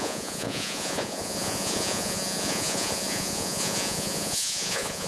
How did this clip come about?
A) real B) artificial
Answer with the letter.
B